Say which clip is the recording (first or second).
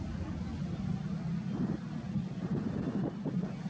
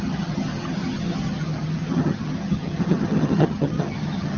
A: first